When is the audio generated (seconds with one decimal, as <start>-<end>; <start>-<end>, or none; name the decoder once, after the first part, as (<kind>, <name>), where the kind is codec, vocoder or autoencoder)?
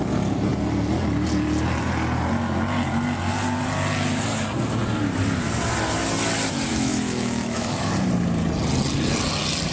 6.7-7.9 (autoencoder, DAC-VAE)